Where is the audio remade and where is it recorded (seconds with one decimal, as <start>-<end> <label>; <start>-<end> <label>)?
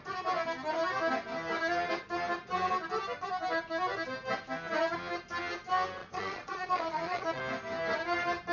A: 0.0-6.0 recorded; 6.0-7.4 remade; 7.4-8.5 recorded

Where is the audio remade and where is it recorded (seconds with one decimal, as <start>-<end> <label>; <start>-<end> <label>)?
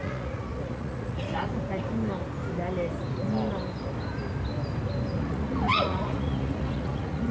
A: 0.0-1.5 remade; 1.5-5.2 recorded; 5.2-7.3 remade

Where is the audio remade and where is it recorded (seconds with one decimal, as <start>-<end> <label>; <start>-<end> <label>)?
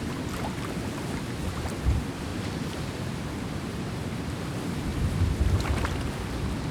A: 0.0-2.3 recorded; 2.3-3.8 remade; 3.8-6.7 recorded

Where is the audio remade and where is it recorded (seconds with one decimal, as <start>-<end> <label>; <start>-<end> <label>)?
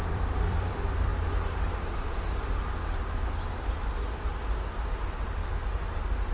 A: 0.0-1.1 remade; 1.1-3.5 recorded; 3.5-4.3 remade; 4.3-4.9 recorded; 4.9-5.4 remade; 5.4-6.3 recorded